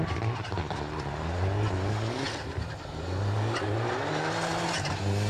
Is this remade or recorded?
recorded